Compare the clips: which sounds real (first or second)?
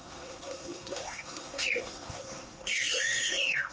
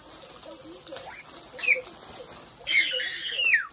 second